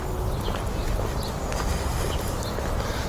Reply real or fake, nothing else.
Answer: real